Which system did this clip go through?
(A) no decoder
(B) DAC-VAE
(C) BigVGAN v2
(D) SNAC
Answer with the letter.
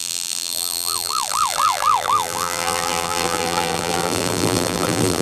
C